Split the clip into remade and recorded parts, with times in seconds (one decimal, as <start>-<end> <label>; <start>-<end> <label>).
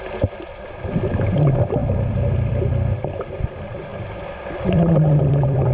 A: 0.0-3.9 remade; 3.9-5.2 recorded; 5.2-5.7 remade